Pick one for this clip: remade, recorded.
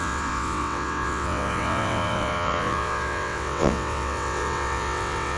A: remade